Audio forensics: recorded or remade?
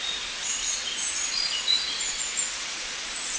remade